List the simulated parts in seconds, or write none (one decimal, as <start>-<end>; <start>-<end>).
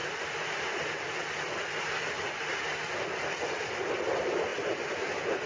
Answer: none